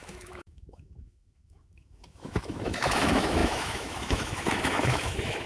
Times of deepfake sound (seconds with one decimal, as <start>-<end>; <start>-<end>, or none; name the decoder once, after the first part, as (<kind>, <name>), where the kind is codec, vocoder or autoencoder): 0.0-5.5 (autoencoder, DAC-VAE)

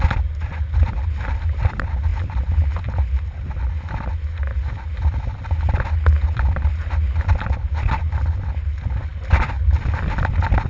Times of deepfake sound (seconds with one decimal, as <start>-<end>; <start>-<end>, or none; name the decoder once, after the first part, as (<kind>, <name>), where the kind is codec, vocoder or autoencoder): none

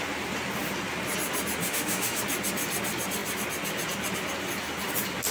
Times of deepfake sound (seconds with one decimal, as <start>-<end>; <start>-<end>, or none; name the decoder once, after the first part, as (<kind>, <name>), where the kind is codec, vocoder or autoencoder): 1.6-2.2 (autoencoder, DAC-VAE)

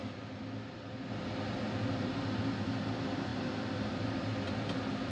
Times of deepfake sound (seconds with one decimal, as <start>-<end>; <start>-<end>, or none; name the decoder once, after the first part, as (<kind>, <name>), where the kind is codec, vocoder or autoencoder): none

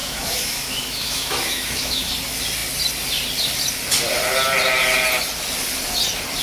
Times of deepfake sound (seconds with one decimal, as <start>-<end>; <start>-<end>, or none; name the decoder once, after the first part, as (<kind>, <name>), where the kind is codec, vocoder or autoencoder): 0.0-2.1 (autoencoder, DAC-VAE)

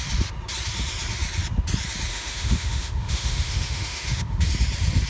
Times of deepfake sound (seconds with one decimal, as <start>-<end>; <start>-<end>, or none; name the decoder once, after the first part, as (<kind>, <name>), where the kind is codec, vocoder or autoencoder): 2.1-4.5 (autoencoder, DAC-VAE)

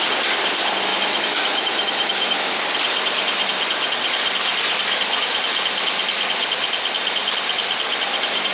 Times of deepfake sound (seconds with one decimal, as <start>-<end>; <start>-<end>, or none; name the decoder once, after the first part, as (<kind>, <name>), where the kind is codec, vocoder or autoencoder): 0.9-2.5 (autoencoder, DAC-VAE)